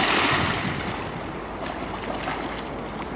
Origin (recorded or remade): recorded